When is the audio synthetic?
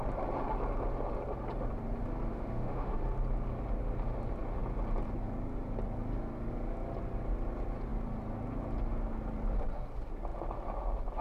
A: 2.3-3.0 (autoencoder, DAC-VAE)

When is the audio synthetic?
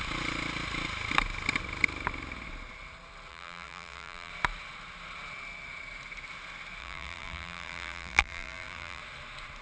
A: 3.3-4.3 (vocoder, BigVGAN v2); 6.8-9.0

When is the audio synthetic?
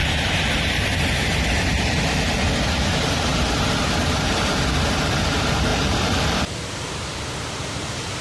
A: 0.0-3.3 (vocoder, BigVGAN v2); 4.7-8.2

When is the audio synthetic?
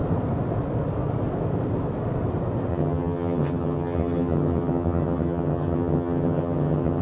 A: 2.7-7.0 (vocoder, HiFi-GAN)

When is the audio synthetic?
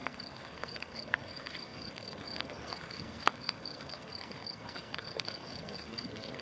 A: 0.0-6.4 (codec, SNAC)